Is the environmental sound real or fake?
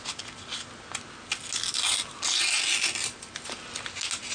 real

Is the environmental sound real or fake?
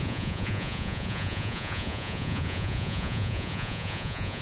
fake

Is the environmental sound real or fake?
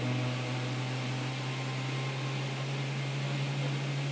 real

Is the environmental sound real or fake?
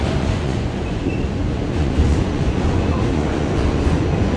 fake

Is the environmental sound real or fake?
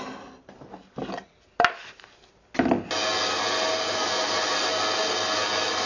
real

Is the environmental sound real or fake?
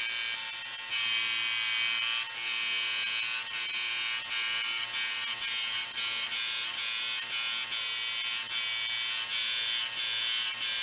real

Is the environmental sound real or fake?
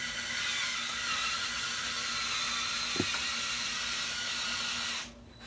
real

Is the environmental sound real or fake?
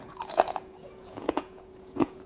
fake